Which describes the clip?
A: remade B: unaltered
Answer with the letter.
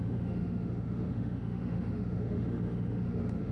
A